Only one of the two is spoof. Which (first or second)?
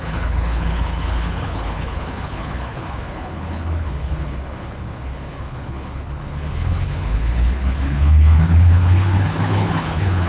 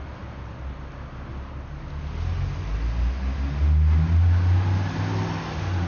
first